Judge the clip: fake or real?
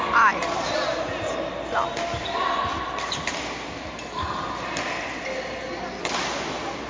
real